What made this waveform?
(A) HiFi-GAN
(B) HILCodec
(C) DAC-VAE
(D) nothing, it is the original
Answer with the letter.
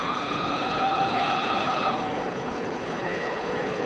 B